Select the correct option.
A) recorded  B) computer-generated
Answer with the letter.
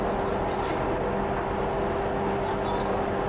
A